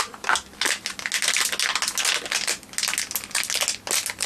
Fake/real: real